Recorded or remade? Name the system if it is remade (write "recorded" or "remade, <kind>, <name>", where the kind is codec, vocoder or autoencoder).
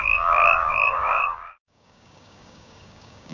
remade, codec, DAC